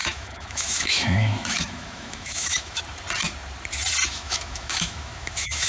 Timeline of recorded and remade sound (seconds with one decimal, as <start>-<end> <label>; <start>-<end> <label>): 0.0-2.8 remade; 2.8-4.0 recorded; 4.0-5.7 remade